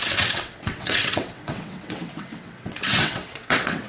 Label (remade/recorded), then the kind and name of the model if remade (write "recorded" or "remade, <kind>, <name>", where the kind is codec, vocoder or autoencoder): remade, vocoder, WaveNeXt